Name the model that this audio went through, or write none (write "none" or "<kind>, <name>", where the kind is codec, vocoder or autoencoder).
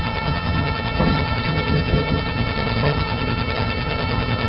vocoder, HiFi-GAN